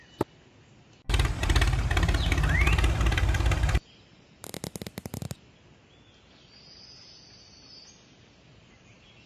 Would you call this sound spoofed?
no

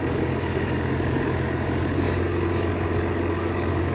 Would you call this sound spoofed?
yes